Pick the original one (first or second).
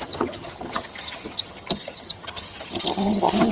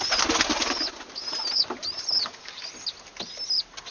second